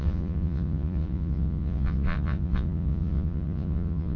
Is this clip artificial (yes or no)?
yes